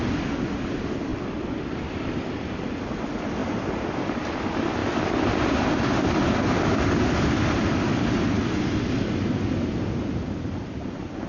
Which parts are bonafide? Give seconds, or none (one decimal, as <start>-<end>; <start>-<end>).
0.0-11.3